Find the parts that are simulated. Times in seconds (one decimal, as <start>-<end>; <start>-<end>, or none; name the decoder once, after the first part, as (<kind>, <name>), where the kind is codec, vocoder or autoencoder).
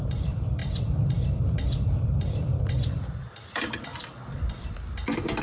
0.0-3.9 (vocoder, BigVGAN v2)